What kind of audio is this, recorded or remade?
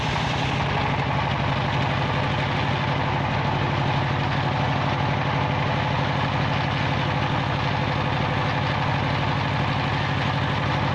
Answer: recorded